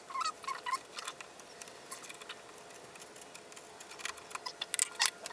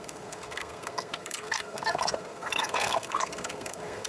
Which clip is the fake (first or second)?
second